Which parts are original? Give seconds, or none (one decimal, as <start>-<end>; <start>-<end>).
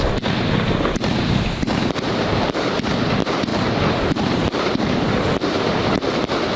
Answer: 0.0-6.6